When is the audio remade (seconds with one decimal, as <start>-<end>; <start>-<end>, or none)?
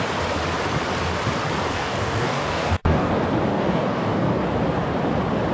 1.7-3.1; 3.5-4.4